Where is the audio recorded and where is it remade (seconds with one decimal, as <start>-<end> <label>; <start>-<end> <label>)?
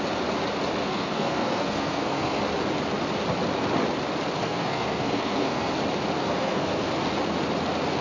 0.0-0.8 recorded; 0.8-2.4 remade; 2.4-4.4 recorded; 4.4-5.7 remade; 5.7-6.2 recorded; 6.2-6.9 remade; 6.9-8.0 recorded